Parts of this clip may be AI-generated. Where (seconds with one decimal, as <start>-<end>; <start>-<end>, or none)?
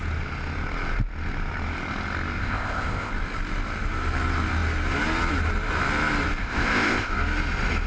2.4-3.1; 6.4-7.1